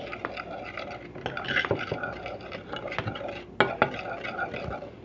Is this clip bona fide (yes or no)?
yes